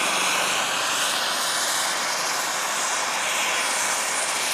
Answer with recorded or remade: recorded